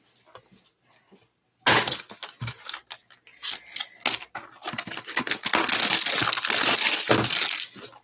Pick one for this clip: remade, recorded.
recorded